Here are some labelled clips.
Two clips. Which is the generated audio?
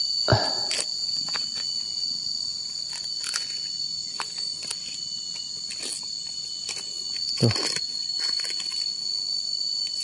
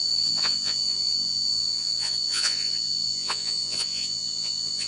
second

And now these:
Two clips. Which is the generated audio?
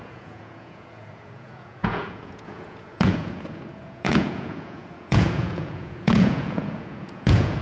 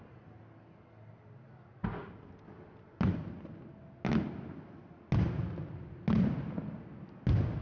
first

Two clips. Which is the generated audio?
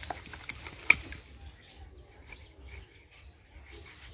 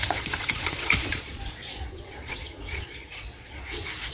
second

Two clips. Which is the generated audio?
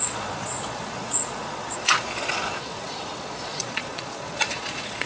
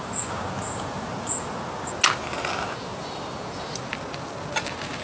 first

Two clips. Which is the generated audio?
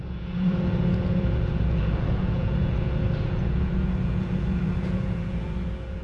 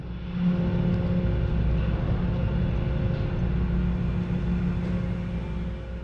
first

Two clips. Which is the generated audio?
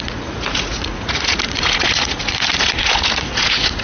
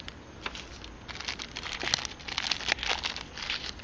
first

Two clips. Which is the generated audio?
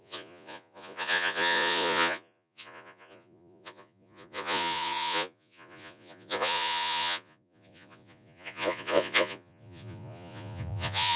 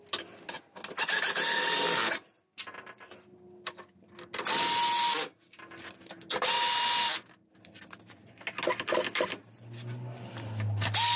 first